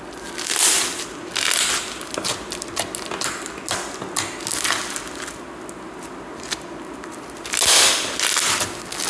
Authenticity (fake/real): real